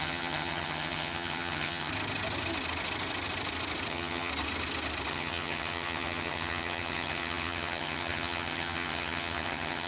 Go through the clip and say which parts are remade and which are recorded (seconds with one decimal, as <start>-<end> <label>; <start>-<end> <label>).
0.0-1.9 remade; 1.9-3.9 recorded; 3.9-4.3 remade; 4.3-5.1 recorded; 5.1-9.9 remade